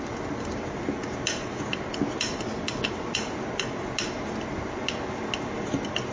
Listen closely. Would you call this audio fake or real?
real